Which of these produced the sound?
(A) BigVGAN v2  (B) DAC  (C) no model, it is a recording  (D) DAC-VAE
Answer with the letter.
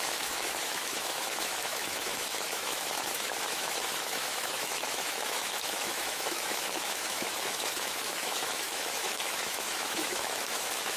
D